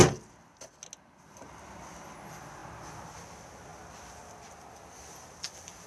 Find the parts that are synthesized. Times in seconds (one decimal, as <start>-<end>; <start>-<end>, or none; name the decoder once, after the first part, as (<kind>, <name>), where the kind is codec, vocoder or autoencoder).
none